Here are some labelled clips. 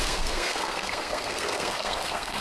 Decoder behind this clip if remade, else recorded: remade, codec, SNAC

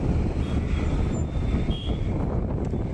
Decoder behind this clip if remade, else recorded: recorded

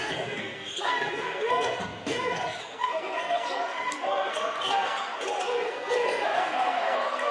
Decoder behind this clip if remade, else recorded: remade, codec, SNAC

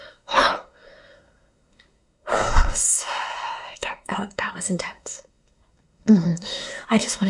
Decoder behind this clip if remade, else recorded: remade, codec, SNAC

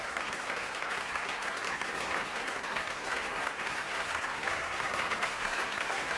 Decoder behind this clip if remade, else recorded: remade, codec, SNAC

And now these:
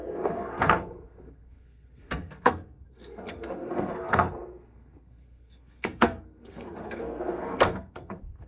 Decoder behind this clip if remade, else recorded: remade, codec, SNAC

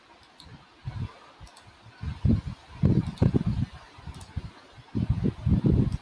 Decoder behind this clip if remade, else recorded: recorded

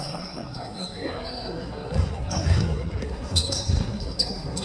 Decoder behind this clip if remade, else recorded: remade, codec, SNAC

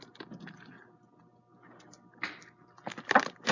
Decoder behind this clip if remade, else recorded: recorded